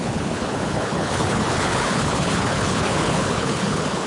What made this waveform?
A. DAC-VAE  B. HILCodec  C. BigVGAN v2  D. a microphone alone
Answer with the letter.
B